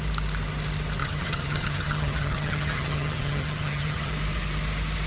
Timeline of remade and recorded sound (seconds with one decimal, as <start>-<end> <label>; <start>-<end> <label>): 0.0-1.0 recorded; 1.0-4.1 remade; 4.1-5.1 recorded